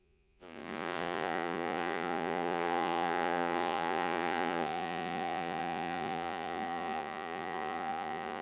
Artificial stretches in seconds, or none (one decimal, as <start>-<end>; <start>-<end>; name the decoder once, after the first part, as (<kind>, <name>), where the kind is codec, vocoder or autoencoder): 0.0-8.4 (vocoder, Vocos)